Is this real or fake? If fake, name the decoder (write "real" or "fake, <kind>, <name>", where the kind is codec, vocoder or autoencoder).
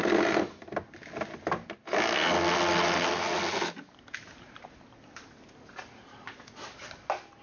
real